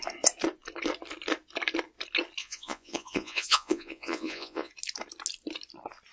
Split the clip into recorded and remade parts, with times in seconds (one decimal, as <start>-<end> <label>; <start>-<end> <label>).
0.0-2.4 recorded; 2.4-4.7 remade; 4.7-6.1 recorded